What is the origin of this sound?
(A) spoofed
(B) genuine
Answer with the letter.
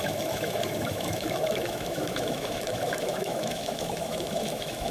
A